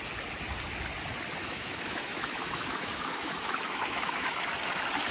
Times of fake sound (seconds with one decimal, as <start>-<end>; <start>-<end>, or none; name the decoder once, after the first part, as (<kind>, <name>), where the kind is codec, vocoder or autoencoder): 1.4-4.5 (autoencoder, DAC-VAE)